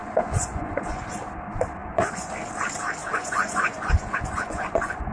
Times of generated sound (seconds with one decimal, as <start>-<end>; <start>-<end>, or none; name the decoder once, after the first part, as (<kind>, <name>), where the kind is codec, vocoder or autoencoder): 0.0-1.0 (vocoder, Vocos); 1.8-2.3; 3.0-5.1

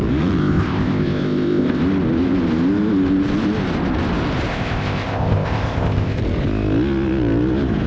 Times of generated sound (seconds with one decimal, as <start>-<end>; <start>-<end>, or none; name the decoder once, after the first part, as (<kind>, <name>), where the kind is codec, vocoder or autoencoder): 0.4-1.8 (codec, ZipCodec); 4.5-6.2

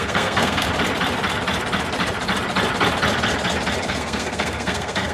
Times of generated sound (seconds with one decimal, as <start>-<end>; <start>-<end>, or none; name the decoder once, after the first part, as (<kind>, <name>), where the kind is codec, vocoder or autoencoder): 0.0-0.7 (codec, SNAC); 3.8-5.1

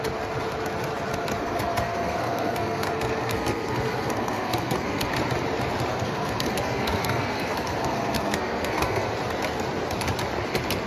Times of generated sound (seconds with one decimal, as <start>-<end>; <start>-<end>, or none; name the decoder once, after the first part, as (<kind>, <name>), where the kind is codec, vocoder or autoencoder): 1.4-5.1 (codec, SNAC); 5.9-9.1

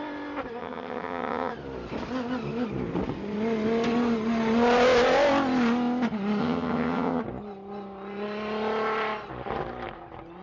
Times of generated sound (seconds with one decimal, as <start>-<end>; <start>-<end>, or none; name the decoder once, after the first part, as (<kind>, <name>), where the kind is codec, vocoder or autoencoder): 0.6-1.5 (vocoder, HiFi-GAN); 6.4-7.2

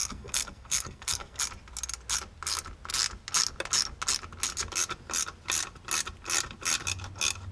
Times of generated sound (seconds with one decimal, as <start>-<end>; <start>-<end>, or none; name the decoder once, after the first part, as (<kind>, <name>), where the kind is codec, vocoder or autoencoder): 0.0-1.4 (codec, SNAC)